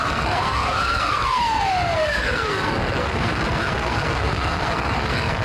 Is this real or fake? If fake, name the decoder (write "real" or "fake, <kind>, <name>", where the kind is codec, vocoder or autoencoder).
fake, codec, SNAC